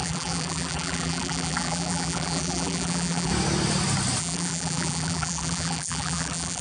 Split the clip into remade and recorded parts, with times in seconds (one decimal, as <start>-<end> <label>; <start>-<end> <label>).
0.0-3.3 remade; 3.3-4.2 recorded; 4.2-6.6 remade